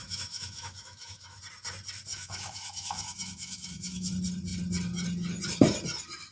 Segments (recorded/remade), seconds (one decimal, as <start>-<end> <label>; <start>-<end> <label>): 0.0-1.4 remade; 1.4-2.1 recorded; 2.1-4.1 remade; 4.1-6.3 recorded